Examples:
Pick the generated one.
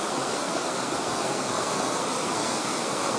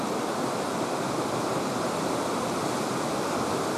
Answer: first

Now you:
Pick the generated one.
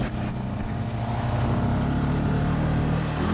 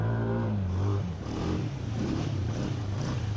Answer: second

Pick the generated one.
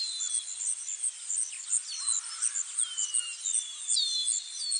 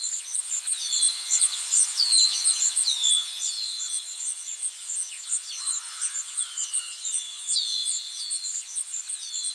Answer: second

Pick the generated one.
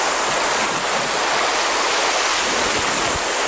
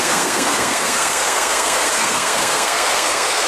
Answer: second